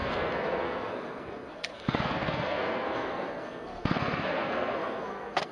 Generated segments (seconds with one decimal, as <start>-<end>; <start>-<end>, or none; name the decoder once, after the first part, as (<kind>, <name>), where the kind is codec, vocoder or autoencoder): 0.0-5.5 (codec, SNAC)